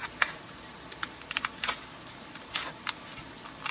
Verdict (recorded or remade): recorded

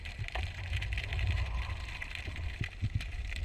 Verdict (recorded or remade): recorded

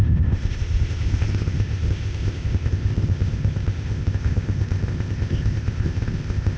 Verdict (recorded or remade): remade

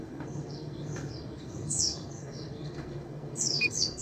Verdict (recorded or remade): remade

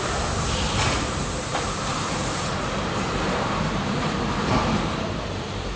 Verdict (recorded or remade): remade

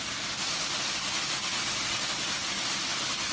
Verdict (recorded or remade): remade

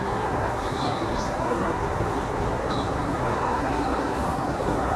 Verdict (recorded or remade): remade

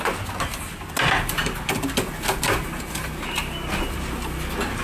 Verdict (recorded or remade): recorded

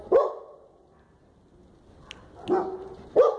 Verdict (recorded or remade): recorded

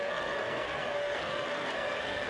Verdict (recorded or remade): remade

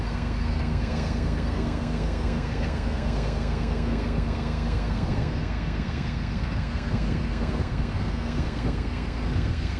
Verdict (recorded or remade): remade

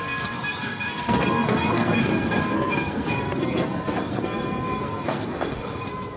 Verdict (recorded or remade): remade